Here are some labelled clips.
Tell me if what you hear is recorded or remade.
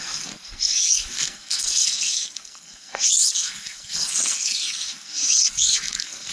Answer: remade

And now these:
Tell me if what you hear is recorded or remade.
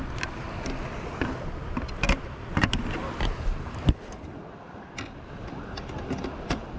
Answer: recorded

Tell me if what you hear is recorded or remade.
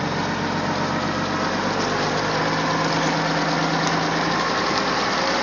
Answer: recorded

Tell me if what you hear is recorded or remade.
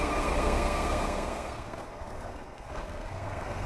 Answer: remade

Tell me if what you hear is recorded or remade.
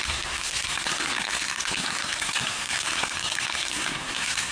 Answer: remade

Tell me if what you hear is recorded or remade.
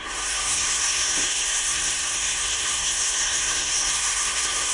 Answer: remade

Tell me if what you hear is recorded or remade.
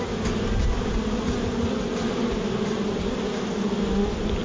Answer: recorded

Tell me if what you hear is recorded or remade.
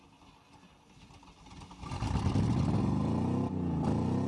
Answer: recorded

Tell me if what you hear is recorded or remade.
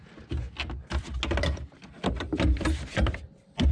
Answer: recorded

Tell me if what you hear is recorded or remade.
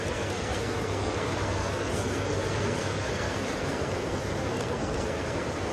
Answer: remade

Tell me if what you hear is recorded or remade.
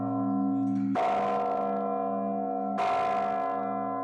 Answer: recorded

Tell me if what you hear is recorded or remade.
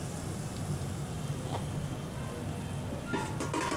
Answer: recorded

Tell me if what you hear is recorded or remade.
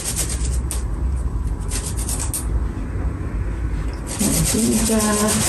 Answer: recorded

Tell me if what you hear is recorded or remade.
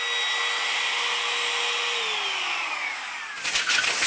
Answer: recorded